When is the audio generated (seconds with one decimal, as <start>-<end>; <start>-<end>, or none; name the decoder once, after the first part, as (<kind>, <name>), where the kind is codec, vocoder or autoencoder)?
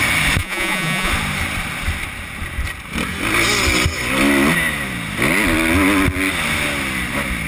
0.4-1.1 (vocoder, Vocos)